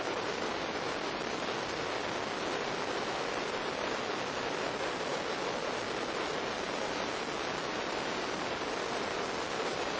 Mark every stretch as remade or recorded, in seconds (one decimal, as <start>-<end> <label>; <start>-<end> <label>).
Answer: 0.0-10.0 recorded